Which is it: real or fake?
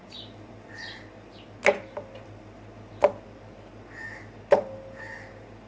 real